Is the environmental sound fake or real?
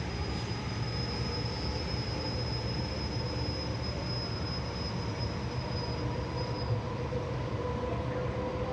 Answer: real